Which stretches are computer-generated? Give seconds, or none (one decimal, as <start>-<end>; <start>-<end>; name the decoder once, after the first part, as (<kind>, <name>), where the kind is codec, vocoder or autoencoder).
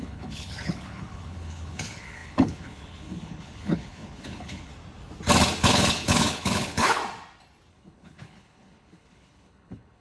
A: 0.0-4.7 (codec, HILCodec); 5.6-7.0; 7.7-10.0